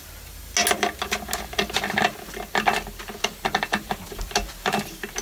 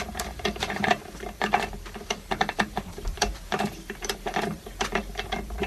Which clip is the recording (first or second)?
first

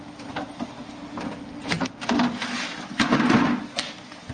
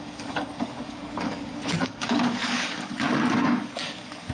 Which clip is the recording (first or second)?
first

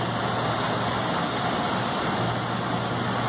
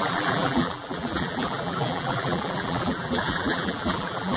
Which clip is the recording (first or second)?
first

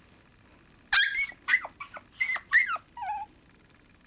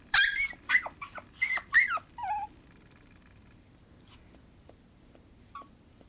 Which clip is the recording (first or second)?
first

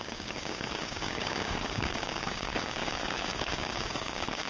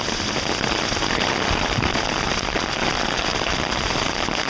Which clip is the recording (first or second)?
second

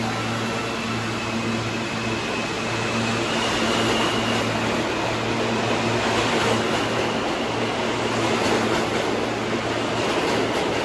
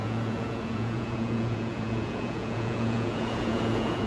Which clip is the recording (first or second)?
first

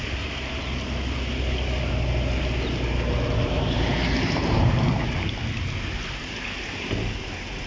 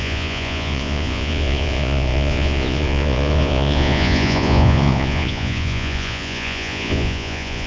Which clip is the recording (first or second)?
first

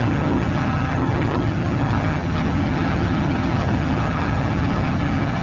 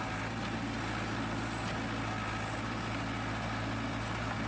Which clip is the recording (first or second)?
second